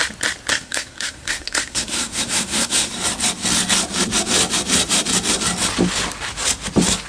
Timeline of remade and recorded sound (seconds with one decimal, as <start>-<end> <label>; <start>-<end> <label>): 0.0-0.5 recorded; 0.5-2.9 remade; 2.9-7.1 recorded